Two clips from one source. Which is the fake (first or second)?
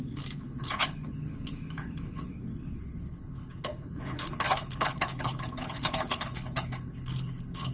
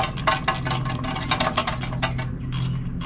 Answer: first